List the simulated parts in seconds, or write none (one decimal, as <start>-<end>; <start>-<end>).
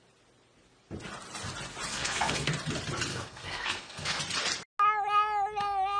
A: 1.9-2.5; 3.1-4.2